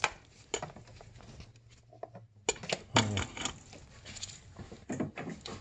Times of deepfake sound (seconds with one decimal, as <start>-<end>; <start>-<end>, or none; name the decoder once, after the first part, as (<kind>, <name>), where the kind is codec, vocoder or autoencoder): none